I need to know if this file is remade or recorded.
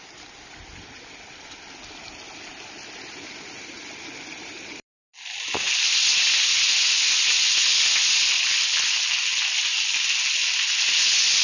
recorded